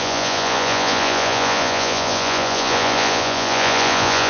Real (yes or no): no